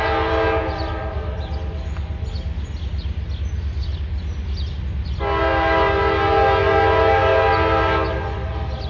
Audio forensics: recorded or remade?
recorded